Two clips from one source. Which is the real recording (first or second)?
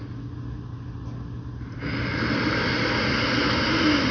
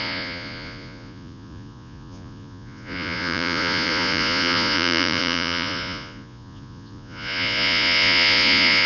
first